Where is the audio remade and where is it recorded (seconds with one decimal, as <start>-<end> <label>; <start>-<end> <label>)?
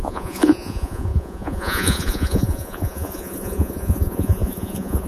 0.0-5.1 remade